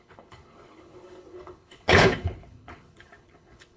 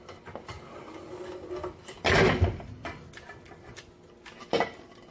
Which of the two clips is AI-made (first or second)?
first